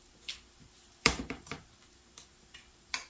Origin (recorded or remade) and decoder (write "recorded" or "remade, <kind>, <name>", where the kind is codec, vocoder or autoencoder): remade, vocoder, BigVGAN v2